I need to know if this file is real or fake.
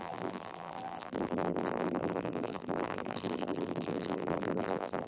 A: fake